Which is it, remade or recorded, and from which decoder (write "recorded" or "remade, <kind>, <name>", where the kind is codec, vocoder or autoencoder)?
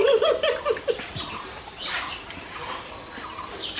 recorded